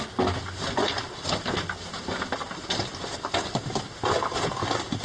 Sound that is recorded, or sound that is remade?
recorded